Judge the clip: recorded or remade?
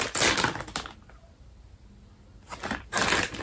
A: recorded